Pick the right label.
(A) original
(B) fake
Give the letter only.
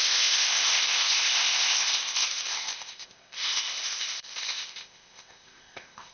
B